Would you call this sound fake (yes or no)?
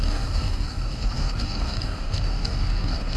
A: yes